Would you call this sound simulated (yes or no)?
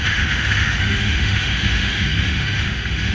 yes